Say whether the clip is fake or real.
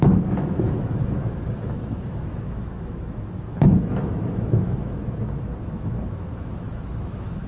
fake